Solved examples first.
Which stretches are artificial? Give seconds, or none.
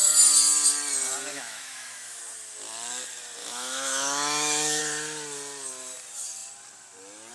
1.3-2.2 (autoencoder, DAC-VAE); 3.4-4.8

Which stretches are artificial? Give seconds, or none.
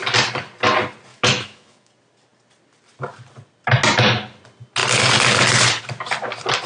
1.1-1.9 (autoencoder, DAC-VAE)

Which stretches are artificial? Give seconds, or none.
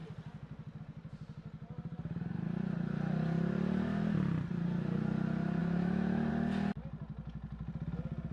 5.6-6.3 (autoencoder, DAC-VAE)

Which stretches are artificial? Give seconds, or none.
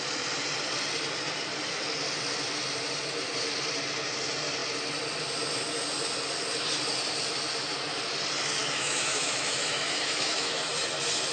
8.6-10.7 (autoencoder, DAC-VAE)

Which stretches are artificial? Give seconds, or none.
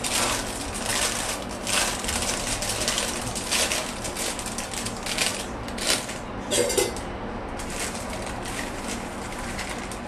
none